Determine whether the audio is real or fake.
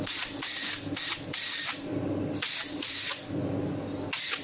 real